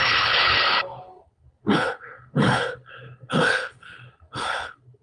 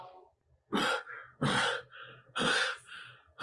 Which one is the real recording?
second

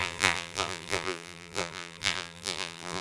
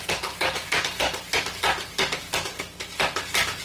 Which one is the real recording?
second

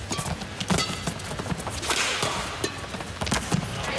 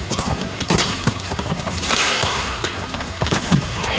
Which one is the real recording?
first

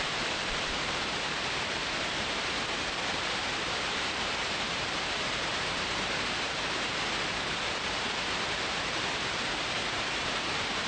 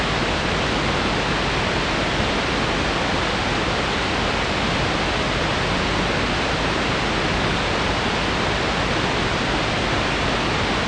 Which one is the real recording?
second